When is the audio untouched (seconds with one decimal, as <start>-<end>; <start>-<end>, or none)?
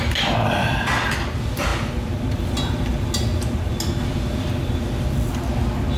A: 0.0-6.0